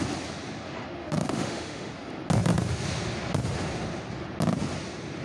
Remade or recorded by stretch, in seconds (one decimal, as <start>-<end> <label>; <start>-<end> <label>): 0.0-1.0 recorded; 1.0-1.9 remade; 1.9-5.2 recorded